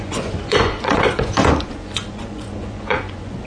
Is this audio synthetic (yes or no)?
yes